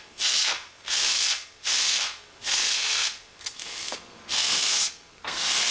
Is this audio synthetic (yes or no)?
yes